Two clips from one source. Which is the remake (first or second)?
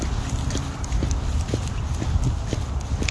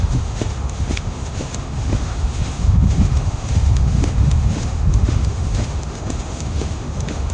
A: second